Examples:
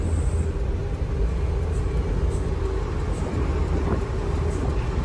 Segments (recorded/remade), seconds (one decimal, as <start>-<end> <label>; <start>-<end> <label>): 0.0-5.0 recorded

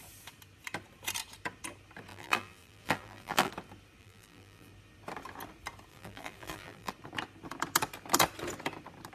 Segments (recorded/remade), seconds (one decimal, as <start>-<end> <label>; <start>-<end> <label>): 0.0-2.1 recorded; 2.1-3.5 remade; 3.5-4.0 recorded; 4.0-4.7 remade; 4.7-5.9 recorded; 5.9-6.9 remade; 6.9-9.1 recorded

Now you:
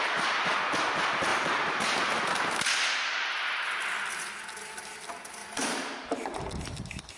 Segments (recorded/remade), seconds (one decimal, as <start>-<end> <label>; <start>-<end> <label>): 0.0-5.4 recorded; 5.4-6.4 remade; 6.4-7.2 recorded